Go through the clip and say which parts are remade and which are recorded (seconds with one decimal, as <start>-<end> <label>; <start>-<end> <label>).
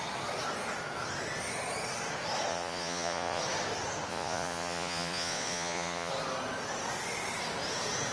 0.0-2.5 recorded; 2.5-3.4 remade; 3.4-4.1 recorded; 4.1-6.1 remade; 6.1-8.1 recorded